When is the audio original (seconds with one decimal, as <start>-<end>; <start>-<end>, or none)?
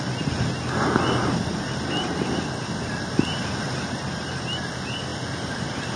0.0-6.0